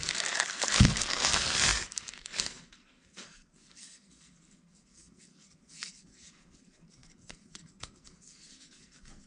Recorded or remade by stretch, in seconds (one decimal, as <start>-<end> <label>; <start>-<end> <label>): 0.0-9.3 remade